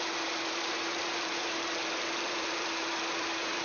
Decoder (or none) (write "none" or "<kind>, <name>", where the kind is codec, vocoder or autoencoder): vocoder, BigVGAN v2